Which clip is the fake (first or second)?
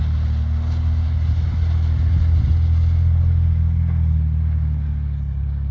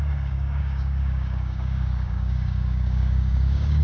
second